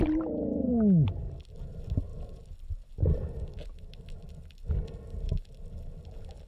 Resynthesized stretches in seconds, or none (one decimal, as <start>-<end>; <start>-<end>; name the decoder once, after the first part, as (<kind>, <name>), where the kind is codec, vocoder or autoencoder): none